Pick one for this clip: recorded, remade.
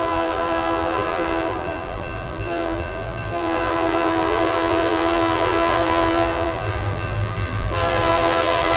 remade